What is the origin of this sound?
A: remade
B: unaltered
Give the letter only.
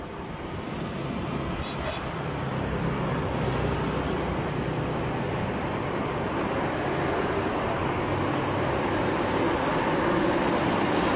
B